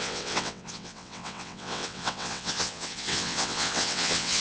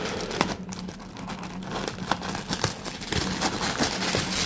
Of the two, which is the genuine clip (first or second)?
second